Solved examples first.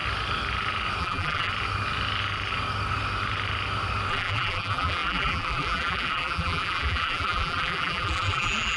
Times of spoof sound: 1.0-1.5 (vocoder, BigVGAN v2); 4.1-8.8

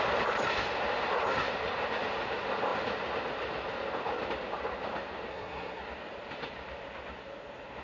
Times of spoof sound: 5.3-5.8 (codec, SNAC)